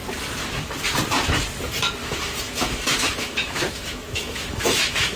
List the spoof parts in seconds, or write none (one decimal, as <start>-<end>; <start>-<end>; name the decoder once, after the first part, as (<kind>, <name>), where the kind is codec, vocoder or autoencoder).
2.0-5.2 (autoencoder, DAC-VAE)